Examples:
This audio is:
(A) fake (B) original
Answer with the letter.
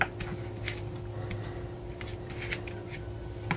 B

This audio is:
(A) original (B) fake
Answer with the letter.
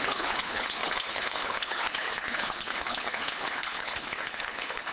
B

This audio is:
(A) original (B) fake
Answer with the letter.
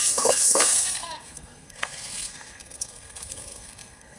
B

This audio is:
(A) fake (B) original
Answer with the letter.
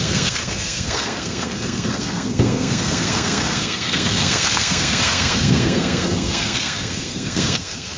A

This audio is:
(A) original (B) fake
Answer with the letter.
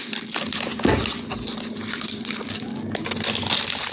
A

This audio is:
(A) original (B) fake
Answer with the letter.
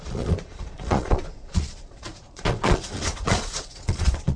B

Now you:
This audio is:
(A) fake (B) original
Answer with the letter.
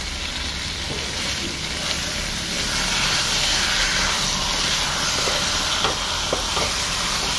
B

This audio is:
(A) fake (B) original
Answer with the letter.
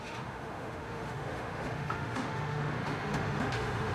A